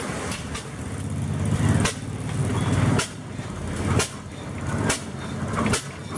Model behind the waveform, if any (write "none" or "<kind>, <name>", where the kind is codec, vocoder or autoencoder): none